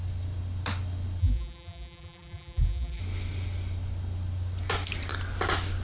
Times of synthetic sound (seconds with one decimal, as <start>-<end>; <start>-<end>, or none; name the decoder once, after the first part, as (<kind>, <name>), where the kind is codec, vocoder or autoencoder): 1.2-3.0 (vocoder, BigVGAN v2)